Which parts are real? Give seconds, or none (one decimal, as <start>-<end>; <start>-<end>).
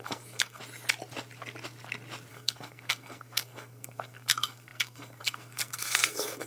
0.6-2.3